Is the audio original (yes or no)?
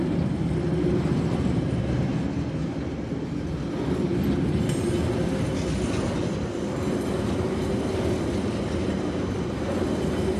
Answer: yes